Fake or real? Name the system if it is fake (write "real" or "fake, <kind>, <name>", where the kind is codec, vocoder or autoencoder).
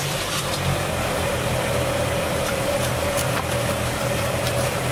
fake, vocoder, BigVGAN v2